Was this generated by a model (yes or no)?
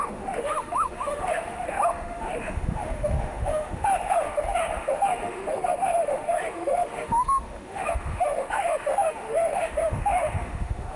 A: yes